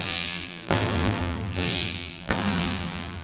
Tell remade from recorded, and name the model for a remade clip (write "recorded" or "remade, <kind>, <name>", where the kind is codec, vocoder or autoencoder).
remade, vocoder, BigVGAN v2